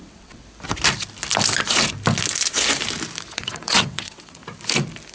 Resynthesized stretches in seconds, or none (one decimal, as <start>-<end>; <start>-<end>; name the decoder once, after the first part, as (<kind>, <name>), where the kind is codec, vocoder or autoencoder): 0.0-0.4 (vocoder, WaveNeXt); 3.3-4.4